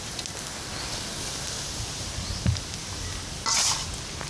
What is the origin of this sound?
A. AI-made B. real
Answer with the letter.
B